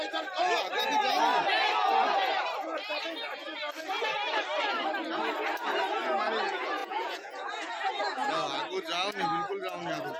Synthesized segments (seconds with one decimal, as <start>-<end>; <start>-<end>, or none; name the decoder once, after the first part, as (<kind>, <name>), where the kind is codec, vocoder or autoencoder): 6.8-8.3 (vocoder, Vocos)